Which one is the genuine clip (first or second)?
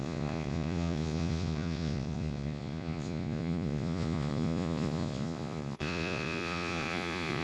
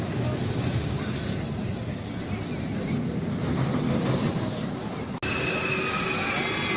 second